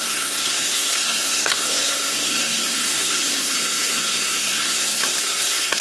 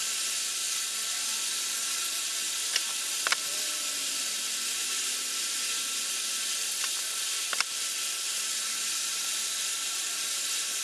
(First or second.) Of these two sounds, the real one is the second